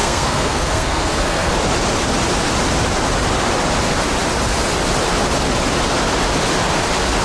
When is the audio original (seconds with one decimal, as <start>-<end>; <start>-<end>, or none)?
1.5-7.2